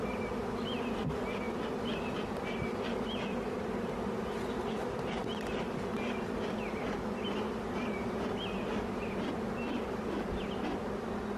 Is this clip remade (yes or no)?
no